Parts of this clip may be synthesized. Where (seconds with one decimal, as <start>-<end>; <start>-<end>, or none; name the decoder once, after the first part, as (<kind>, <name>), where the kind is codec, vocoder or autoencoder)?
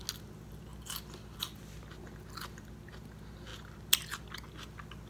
none